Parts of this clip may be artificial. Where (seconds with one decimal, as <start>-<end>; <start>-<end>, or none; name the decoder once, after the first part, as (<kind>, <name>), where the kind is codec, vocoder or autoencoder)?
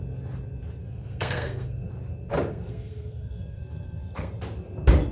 0.8-1.9 (codec, SNAC); 2.5-4.3